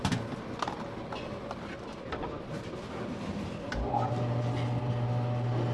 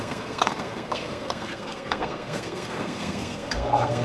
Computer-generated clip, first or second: second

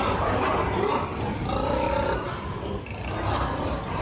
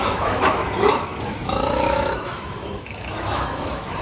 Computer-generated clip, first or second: second